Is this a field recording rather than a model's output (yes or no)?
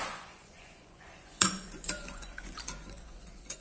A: no